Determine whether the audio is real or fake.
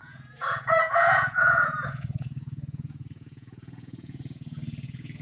fake